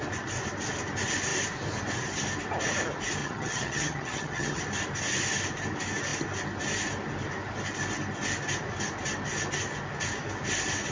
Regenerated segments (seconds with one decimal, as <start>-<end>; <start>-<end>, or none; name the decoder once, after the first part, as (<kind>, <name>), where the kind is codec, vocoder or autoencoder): 3.2-4.6 (vocoder, HiFi-GAN)